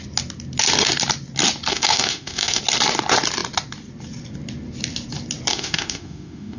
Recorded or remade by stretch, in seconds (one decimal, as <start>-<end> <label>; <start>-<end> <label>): 0.0-1.7 recorded; 1.7-2.6 remade; 2.6-5.5 recorded; 5.5-6.6 remade

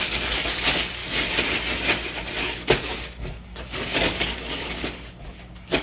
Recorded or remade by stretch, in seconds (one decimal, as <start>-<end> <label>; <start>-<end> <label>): 0.0-1.0 remade; 1.0-2.4 recorded; 2.4-5.8 remade

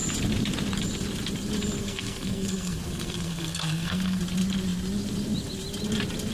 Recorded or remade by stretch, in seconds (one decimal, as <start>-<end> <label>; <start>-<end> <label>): 0.0-1.8 recorded; 1.8-4.2 remade; 4.2-6.3 recorded

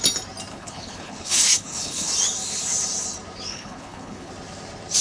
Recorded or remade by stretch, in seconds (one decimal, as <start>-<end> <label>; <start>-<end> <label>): 0.0-0.5 recorded; 0.5-2.1 remade; 2.1-3.5 recorded; 3.5-4.3 remade; 4.3-5.0 recorded

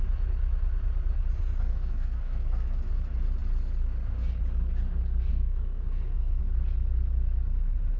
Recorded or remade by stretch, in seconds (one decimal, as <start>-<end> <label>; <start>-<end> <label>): 0.0-1.7 recorded; 1.7-2.8 remade; 2.8-5.3 recorded; 5.3-6.4 remade; 6.4-8.0 recorded

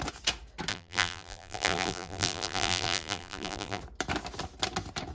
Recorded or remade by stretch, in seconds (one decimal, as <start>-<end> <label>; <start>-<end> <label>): 0.0-0.7 recorded; 0.7-3.8 remade; 3.8-5.1 recorded

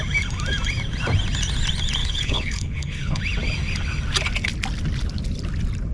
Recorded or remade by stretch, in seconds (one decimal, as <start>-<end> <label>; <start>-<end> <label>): 0.0-2.0 recorded; 2.0-3.2 remade; 3.2-5.9 recorded